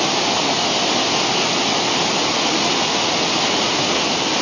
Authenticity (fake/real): real